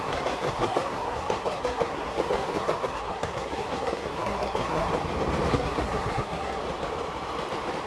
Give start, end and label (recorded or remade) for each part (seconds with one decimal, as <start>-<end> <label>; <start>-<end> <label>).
0.0-4.9 remade; 4.9-5.5 recorded; 5.5-6.6 remade; 6.6-7.9 recorded